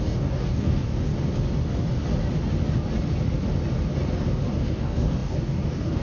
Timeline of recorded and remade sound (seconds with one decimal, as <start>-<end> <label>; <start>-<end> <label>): 0.0-1.1 remade; 1.1-4.5 recorded; 4.5-6.0 remade